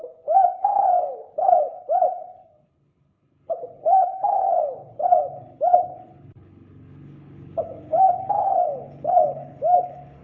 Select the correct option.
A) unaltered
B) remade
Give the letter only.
B